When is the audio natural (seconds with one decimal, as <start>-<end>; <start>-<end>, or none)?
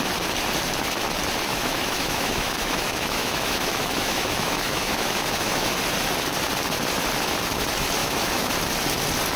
0.0-1.5; 5.7-8.0; 8.5-9.4